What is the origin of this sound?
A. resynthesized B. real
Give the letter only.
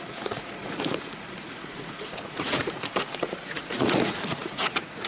A